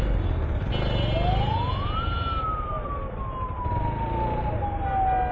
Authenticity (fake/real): real